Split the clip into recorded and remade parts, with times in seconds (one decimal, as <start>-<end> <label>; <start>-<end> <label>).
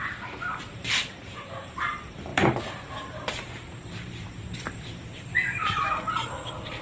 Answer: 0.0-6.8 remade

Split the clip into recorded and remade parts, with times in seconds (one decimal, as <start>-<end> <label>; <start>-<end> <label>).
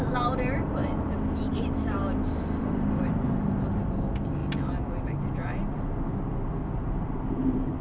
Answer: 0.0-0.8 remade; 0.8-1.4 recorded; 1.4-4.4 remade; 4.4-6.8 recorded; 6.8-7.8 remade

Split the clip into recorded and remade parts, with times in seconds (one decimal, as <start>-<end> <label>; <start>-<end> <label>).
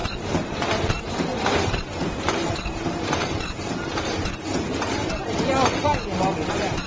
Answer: 0.0-5.9 remade; 5.9-6.5 recorded; 6.5-6.9 remade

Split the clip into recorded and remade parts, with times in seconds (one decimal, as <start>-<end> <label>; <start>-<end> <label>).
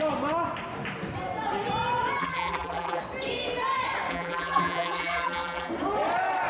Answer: 0.0-2.2 recorded; 2.2-3.0 remade; 3.0-4.1 recorded; 4.1-5.7 remade; 5.7-6.5 recorded